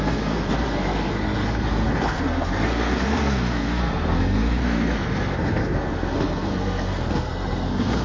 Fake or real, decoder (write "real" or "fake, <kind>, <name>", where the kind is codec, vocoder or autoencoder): fake, codec, SNAC